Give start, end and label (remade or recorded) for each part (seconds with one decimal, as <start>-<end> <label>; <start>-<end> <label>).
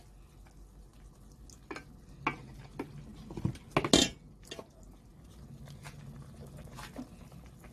0.0-7.7 recorded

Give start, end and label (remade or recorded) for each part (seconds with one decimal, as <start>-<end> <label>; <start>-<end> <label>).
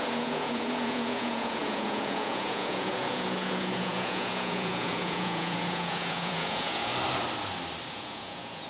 0.0-6.9 remade; 6.9-7.9 recorded; 7.9-8.7 remade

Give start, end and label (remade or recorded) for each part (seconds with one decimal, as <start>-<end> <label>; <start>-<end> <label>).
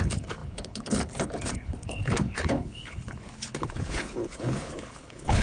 0.0-5.4 remade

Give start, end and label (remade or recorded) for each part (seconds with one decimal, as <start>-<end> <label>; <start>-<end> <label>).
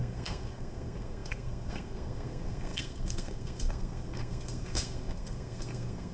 0.0-6.1 remade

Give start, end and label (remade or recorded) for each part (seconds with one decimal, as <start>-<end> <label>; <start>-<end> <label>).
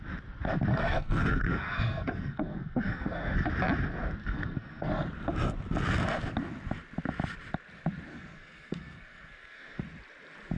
0.0-0.7 recorded; 0.7-3.5 remade; 3.5-4.2 recorded; 4.2-4.9 remade; 4.9-8.1 recorded; 8.1-9.8 remade; 9.8-10.6 recorded